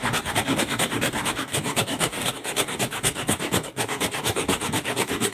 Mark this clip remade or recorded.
remade